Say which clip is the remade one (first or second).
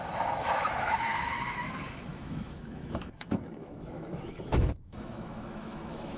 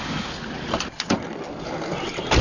first